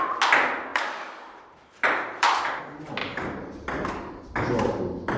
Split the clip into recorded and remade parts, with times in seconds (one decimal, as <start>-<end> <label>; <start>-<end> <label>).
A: 0.0-0.7 recorded; 0.7-2.6 remade; 2.6-5.2 recorded